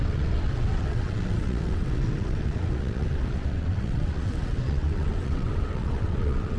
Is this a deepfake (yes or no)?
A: yes